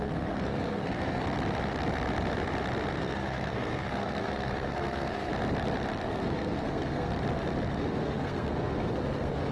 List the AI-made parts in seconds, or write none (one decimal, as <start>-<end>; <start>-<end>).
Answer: 0.0-1.2; 2.9-5.3; 6.0-7.1; 7.7-9.5

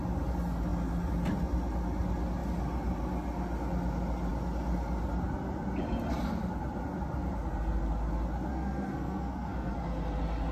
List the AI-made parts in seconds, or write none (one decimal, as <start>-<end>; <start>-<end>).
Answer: 8.5-9.7

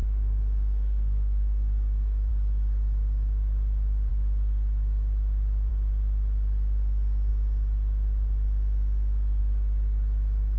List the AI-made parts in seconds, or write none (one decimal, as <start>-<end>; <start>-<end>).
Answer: 0.0-2.3